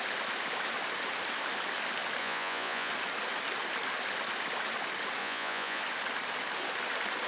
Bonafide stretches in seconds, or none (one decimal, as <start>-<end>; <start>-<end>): 0.0-2.2; 2.9-5.2; 5.8-7.3